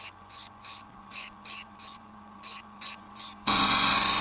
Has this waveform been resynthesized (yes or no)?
yes